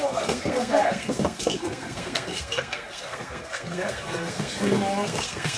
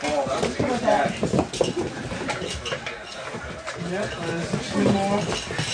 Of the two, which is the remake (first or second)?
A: first